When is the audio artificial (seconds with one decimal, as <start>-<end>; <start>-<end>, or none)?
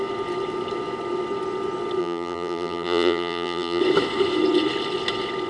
2.0-3.8